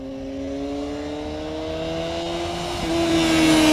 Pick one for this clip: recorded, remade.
recorded